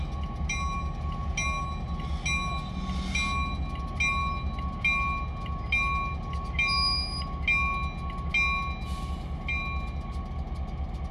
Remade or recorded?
recorded